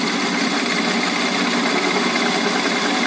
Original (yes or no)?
yes